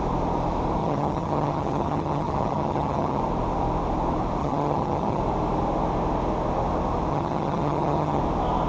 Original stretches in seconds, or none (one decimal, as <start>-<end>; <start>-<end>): 0.0-0.8; 3.2-4.4; 5.2-7.1; 8.2-8.7